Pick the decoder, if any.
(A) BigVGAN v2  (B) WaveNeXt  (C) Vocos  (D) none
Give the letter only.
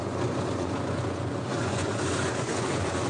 C